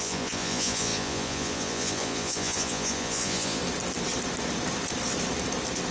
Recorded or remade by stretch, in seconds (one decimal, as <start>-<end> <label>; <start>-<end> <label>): 0.0-3.6 remade; 3.6-5.9 recorded